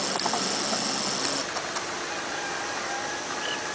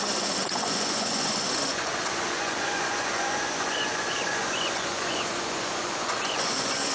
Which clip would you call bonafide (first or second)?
first